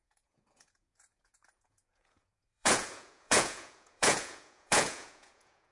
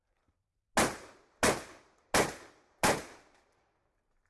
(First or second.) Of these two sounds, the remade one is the first